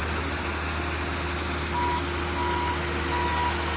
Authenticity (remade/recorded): recorded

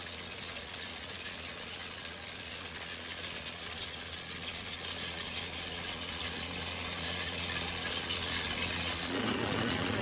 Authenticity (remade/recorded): remade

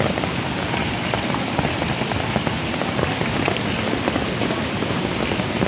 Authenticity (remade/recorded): recorded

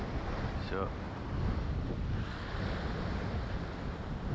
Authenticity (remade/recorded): recorded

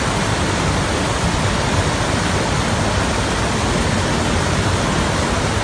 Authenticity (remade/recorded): recorded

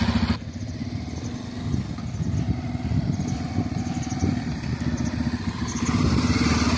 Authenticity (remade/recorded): recorded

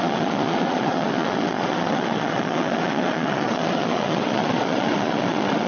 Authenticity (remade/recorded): remade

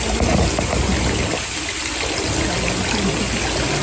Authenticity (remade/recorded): recorded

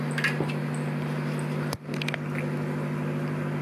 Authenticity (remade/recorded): recorded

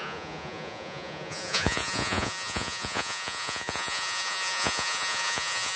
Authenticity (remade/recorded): remade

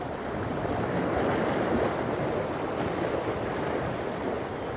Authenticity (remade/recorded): recorded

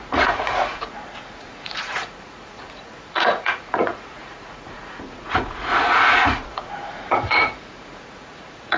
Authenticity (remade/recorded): remade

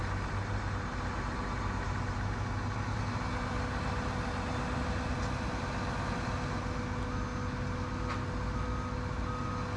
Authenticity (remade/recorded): recorded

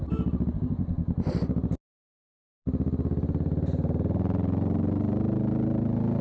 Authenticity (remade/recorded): recorded